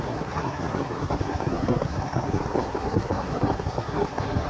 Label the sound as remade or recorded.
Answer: remade